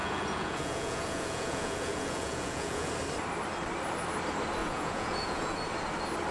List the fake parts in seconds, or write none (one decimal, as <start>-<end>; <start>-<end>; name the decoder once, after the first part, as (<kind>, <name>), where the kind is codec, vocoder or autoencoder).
0.0-2.9 (vocoder, Vocos); 4.6-5.6